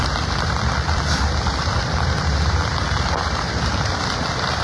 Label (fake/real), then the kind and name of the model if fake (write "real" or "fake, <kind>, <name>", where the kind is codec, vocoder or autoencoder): fake, vocoder, BigVGAN v2